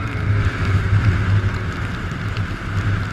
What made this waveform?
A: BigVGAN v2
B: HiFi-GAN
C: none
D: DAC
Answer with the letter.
A